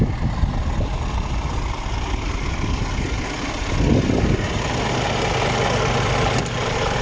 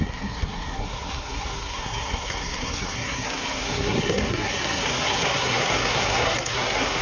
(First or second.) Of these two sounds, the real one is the first